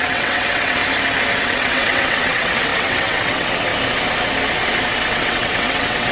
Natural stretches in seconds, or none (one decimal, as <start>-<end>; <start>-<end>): 0.8-1.4; 3.7-5.1